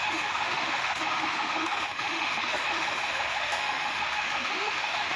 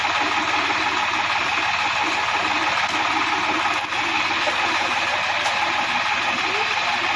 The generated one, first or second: first